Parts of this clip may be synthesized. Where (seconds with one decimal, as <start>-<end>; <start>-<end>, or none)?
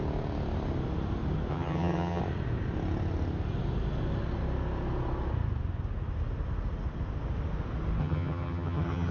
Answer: 1.5-2.2; 8.0-9.1